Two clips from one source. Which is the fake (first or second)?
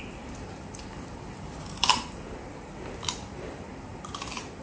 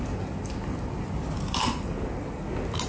first